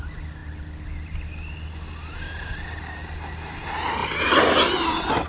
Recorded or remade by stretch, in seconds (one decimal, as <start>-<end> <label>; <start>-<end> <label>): 0.0-5.3 recorded